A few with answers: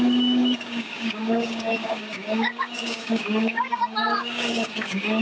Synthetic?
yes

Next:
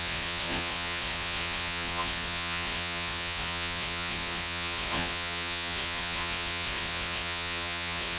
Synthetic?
yes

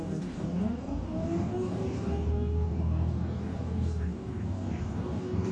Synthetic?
yes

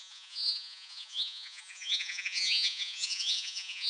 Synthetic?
yes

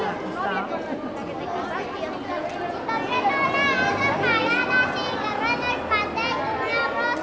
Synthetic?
no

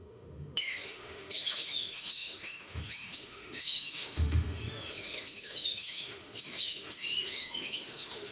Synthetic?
yes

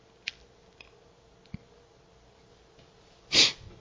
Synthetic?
no